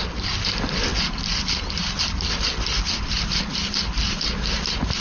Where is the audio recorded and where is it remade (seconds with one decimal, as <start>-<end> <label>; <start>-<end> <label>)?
0.0-5.0 recorded